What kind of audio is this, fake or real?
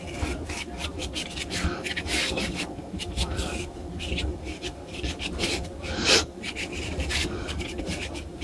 fake